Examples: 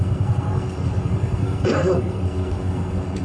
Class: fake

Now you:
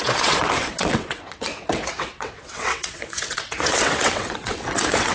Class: fake